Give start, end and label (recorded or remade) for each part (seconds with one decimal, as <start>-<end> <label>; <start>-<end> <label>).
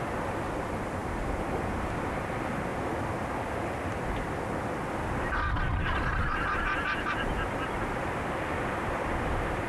0.0-9.7 recorded